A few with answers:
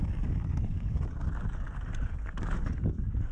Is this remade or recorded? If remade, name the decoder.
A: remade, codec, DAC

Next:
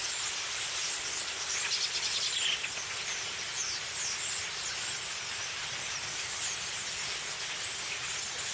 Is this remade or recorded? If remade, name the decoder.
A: recorded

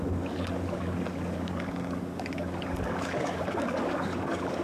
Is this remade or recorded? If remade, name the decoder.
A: remade, codec, DAC